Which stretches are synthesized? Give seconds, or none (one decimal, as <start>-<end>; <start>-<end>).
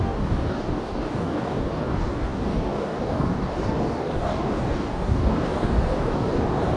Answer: 0.0-6.8